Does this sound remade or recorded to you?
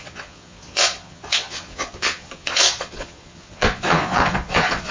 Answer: remade